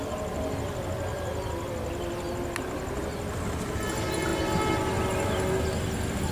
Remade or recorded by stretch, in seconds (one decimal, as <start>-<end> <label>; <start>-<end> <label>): 0.0-6.3 recorded